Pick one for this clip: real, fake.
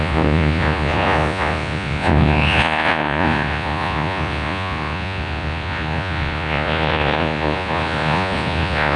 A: fake